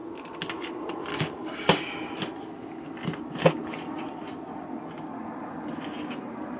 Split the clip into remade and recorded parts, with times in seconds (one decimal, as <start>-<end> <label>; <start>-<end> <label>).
0.0-1.1 recorded; 1.1-1.8 remade; 1.8-6.6 recorded